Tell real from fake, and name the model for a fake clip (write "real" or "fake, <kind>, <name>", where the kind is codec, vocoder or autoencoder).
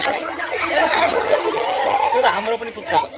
fake, vocoder, HiFi-GAN